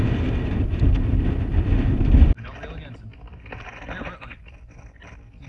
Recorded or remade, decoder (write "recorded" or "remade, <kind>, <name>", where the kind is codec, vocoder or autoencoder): recorded